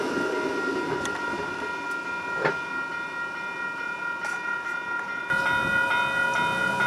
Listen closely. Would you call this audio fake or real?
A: real